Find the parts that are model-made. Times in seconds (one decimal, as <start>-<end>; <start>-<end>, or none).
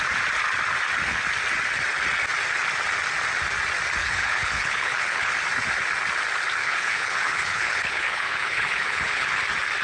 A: 4.0-5.3; 6.6-9.4